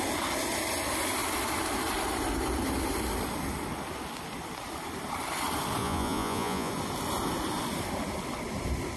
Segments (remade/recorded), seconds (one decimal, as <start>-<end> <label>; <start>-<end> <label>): 0.0-5.8 recorded; 5.8-6.7 remade; 6.7-9.0 recorded